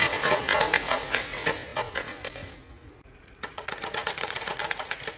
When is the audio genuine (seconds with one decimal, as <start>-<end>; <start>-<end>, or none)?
none